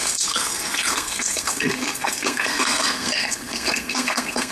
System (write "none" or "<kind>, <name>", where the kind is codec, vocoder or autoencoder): codec, SNAC